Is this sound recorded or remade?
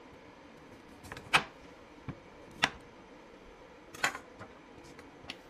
recorded